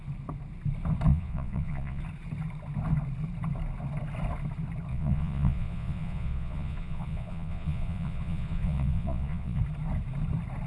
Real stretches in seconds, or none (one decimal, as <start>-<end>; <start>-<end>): 0.0-1.1; 2.0-4.9; 9.6-10.7